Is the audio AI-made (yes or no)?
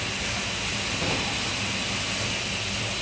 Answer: no